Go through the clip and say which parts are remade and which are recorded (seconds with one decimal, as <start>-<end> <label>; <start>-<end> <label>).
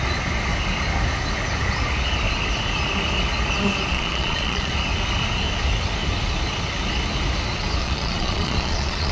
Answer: 0.0-3.9 recorded; 3.9-4.7 remade; 4.7-7.8 recorded; 7.8-9.1 remade